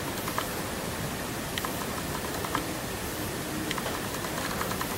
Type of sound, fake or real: fake